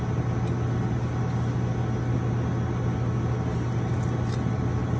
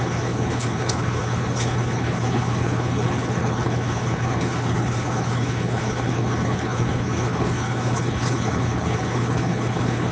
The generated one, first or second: second